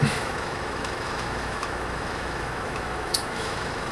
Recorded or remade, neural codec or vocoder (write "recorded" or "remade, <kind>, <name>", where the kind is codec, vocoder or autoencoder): remade, autoencoder, DAC-VAE